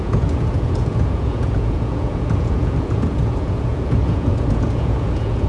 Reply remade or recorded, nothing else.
remade